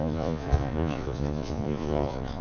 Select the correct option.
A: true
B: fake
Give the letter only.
B